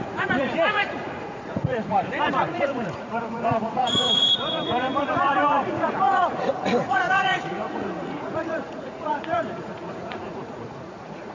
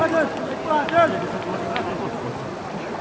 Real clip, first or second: second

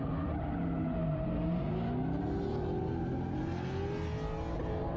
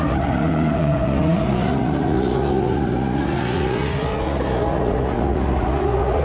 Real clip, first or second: first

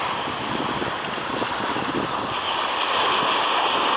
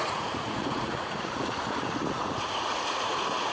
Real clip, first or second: first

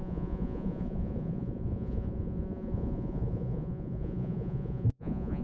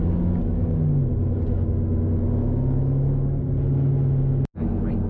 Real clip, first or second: second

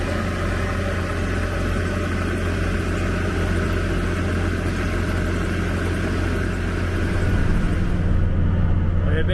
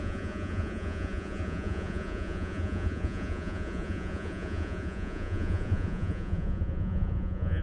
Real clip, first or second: first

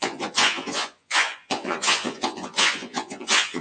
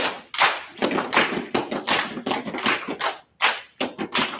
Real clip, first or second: second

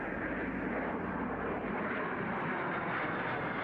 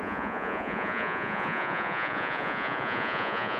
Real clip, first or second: first